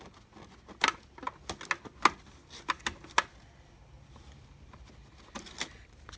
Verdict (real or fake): real